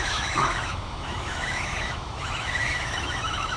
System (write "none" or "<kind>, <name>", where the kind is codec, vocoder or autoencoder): autoencoder, DAC-VAE